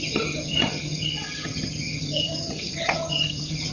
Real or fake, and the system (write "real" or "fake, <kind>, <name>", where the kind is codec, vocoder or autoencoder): fake, vocoder, HiFi-GAN